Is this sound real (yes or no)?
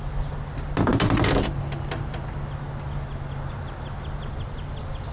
yes